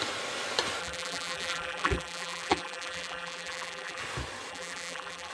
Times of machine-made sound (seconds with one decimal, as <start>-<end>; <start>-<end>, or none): 0.8-4.0; 4.5-5.3